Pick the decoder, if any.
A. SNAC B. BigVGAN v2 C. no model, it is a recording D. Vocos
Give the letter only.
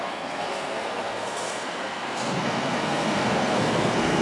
A